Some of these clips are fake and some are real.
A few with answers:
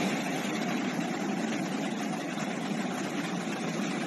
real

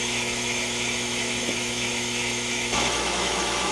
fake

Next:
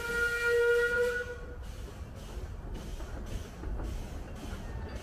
real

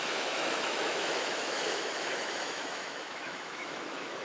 fake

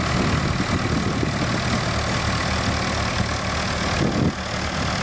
real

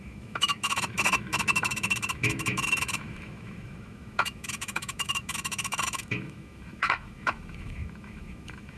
fake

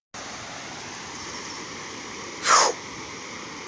real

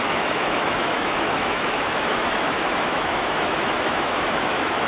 fake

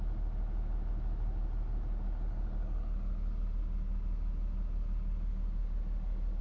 real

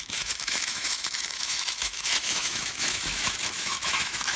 fake